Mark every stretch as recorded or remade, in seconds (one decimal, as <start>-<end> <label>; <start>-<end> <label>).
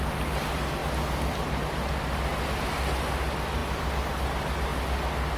0.0-5.4 recorded